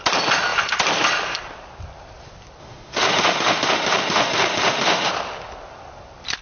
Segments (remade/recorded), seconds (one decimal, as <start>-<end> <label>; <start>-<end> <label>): 0.0-2.6 recorded; 2.6-5.1 remade; 5.1-6.4 recorded